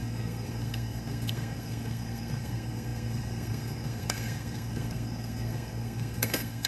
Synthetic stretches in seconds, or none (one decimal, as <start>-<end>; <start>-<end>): 0.0-6.7